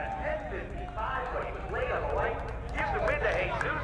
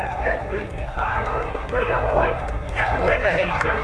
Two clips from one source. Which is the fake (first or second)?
second